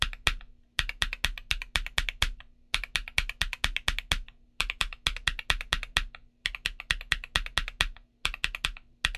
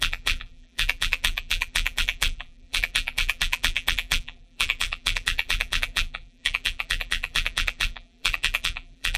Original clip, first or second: first